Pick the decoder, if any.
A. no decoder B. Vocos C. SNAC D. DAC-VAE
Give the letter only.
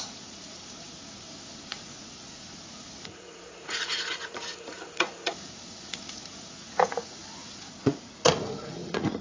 B